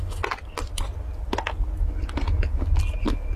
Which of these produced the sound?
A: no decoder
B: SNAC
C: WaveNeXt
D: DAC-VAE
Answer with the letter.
A